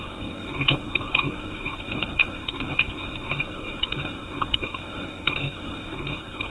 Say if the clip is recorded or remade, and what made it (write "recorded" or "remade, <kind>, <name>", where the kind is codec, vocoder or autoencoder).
remade, codec, SNAC